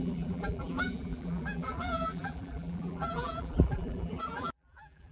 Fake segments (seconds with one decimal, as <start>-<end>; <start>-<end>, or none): 0.0-5.1